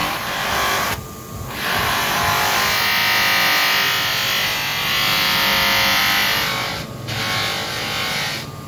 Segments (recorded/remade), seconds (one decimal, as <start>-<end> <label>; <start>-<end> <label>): 0.0-8.7 recorded